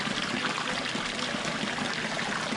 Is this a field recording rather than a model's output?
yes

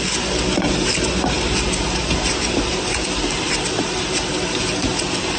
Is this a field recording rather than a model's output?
yes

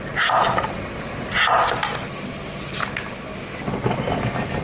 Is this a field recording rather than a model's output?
yes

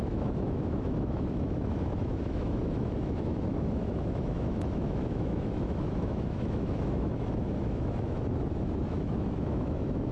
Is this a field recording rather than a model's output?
no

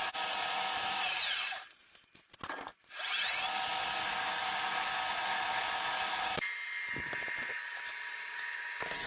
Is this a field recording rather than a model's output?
yes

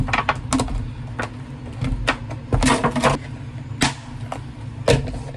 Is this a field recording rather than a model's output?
yes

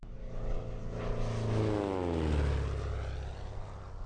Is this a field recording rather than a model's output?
yes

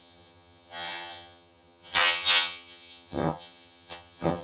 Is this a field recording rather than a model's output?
no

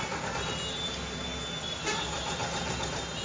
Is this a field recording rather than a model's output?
yes